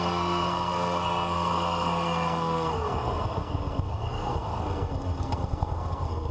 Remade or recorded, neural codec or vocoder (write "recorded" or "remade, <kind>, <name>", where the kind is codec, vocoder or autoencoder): remade, codec, SNAC